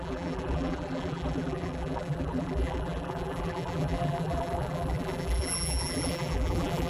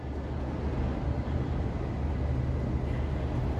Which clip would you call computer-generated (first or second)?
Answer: first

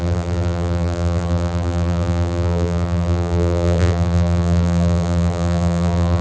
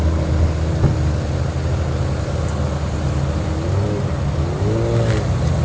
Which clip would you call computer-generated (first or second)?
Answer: first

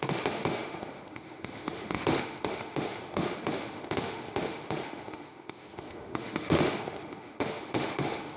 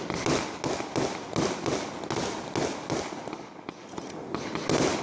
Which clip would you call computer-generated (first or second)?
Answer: first